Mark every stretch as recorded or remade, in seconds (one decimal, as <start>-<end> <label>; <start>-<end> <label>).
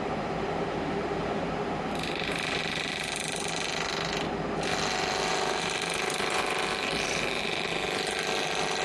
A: 0.0-2.6 remade; 2.6-5.3 recorded; 5.3-7.7 remade; 7.7-8.8 recorded